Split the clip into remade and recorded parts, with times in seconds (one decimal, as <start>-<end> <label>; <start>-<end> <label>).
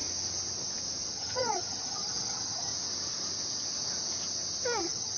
0.0-1.1 recorded; 1.1-2.7 remade; 2.7-4.8 recorded; 4.8-5.2 remade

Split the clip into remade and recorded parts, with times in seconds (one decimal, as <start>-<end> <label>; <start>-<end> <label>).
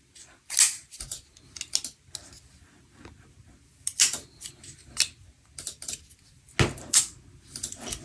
0.0-8.0 recorded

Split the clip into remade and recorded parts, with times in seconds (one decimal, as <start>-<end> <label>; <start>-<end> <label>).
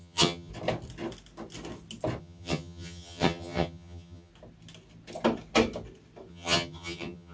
0.0-0.5 remade; 0.5-2.2 recorded; 2.2-4.3 remade; 4.3-6.3 recorded; 6.3-7.3 remade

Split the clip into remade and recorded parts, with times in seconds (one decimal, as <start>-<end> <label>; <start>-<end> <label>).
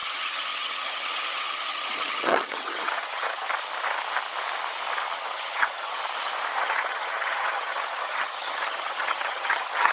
0.0-3.5 remade; 3.5-5.2 recorded; 5.2-6.0 remade; 6.0-6.5 recorded; 6.5-9.9 remade